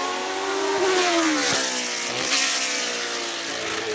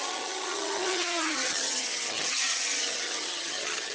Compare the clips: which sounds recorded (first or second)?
first